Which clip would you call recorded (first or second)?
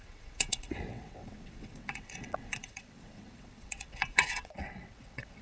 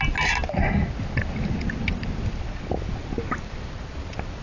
second